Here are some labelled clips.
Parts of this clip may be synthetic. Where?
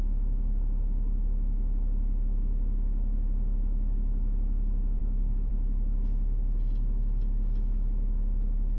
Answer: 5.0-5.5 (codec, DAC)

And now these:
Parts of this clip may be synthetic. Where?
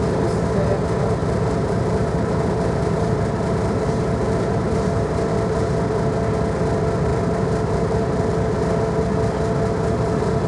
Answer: 1.2-5.3 (vocoder, BigVGAN v2); 7.1-8.7